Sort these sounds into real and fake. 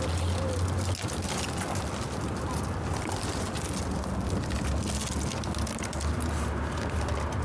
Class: real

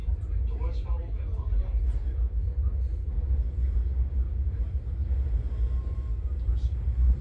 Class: fake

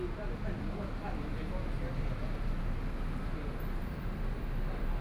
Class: real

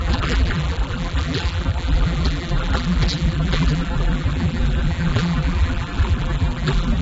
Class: fake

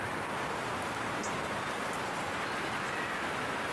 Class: real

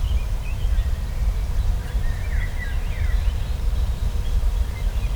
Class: fake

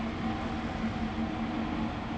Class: real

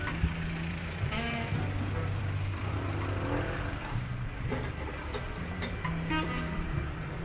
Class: fake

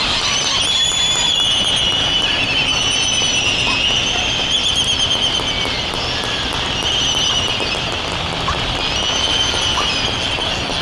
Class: real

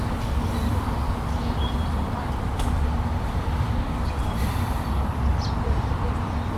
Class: fake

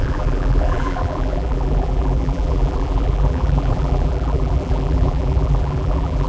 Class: fake